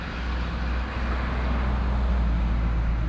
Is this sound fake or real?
real